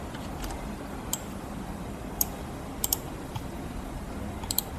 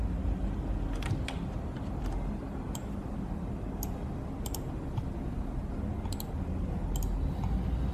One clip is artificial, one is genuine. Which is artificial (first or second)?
first